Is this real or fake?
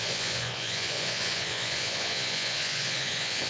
fake